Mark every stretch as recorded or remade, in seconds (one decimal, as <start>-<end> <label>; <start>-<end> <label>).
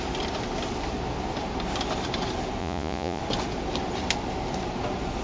0.0-2.6 recorded; 2.6-3.2 remade; 3.2-5.2 recorded